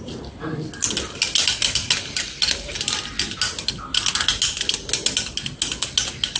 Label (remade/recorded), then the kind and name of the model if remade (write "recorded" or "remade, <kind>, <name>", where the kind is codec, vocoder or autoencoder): recorded